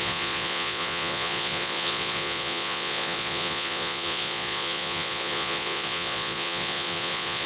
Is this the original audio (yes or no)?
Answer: no